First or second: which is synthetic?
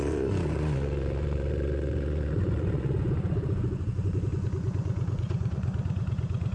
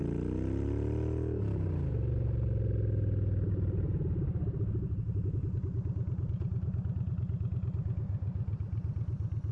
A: first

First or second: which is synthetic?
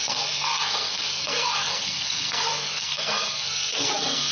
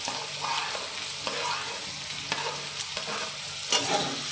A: first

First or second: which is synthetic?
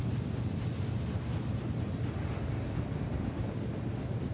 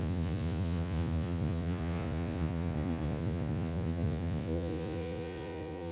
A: second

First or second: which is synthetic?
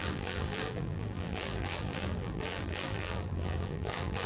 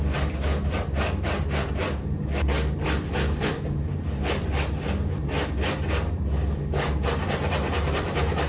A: first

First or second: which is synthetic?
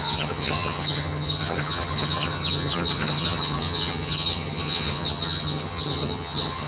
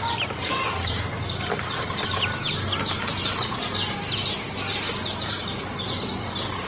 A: first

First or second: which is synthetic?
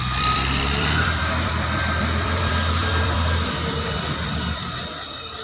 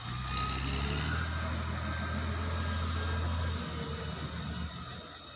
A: first